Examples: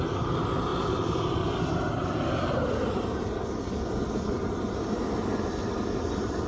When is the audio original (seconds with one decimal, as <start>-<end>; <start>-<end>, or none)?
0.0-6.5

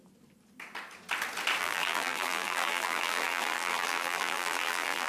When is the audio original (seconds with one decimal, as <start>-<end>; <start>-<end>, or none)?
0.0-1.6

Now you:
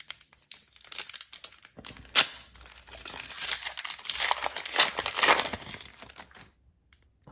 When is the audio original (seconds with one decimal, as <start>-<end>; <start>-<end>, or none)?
0.0-7.3

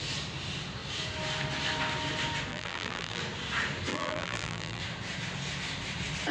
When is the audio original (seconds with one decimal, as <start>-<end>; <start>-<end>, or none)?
0.0-2.5; 3.2-3.9; 4.8-6.3